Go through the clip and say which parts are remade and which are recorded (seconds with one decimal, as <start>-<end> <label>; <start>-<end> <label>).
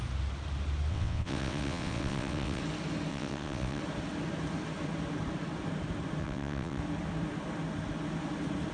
0.0-0.9 recorded; 0.9-2.6 remade; 2.6-3.1 recorded; 3.1-3.8 remade; 3.8-6.2 recorded; 6.2-6.8 remade; 6.8-8.7 recorded